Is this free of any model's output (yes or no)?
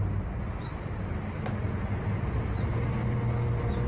yes